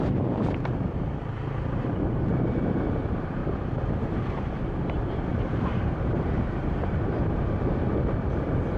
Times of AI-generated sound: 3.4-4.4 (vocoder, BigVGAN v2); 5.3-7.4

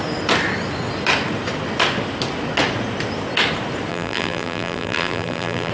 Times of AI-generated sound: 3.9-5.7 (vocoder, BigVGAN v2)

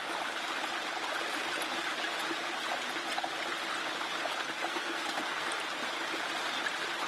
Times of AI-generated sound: 4.7-5.5 (codec, SNAC)

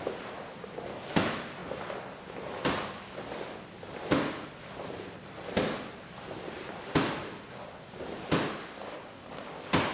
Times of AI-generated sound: none

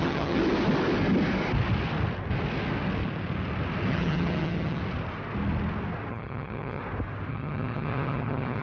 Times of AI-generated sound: 0.0-0.4 (vocoder, HiFi-GAN); 3.9-4.8; 6.1-6.8; 7.3-8.6